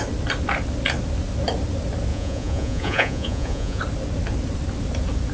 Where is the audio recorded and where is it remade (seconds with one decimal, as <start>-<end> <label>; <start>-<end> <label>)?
0.0-2.1 recorded; 2.1-3.8 remade; 3.8-5.3 recorded